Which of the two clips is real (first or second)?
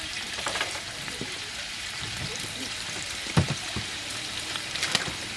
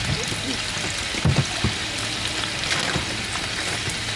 second